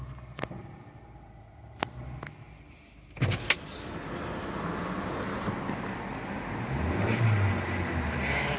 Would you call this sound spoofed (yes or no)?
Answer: no